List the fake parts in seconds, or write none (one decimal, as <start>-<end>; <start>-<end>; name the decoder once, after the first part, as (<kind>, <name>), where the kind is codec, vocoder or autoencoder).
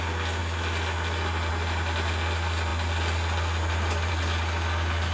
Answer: none